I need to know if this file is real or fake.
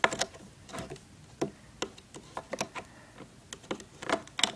real